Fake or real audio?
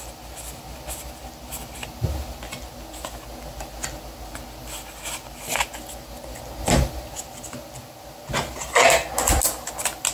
real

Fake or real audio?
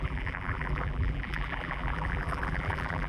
fake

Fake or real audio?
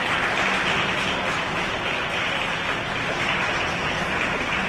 real